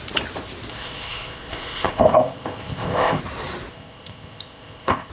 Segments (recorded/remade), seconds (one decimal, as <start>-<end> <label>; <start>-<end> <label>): 0.0-0.7 recorded; 0.7-3.2 remade; 3.2-3.7 recorded; 3.7-5.1 remade